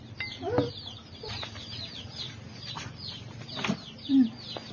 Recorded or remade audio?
recorded